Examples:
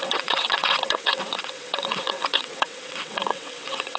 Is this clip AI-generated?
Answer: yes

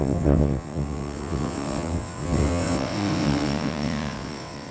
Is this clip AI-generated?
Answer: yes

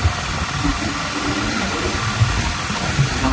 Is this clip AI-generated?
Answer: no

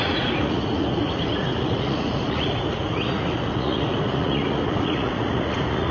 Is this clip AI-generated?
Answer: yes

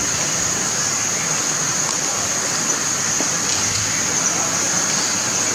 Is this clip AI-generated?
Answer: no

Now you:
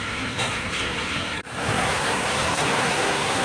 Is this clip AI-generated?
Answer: yes